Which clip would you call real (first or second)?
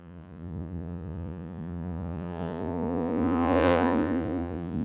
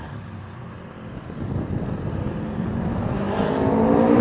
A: second